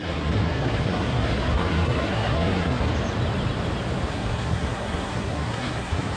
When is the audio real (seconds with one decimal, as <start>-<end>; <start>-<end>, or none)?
2.9-4.1